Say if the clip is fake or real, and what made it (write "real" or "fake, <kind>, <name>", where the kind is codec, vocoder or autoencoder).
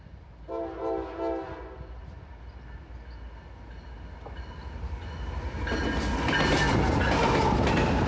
real